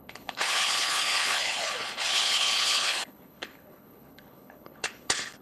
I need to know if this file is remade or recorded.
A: remade